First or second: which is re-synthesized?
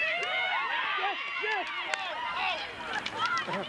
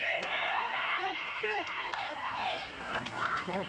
second